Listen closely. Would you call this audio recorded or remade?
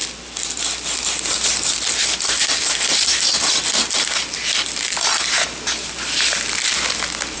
recorded